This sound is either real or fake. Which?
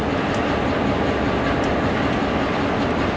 real